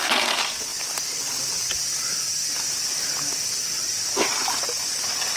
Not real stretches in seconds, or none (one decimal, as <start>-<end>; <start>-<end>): none